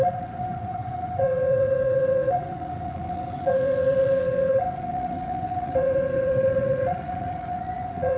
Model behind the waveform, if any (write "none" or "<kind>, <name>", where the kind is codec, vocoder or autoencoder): vocoder, WaveNeXt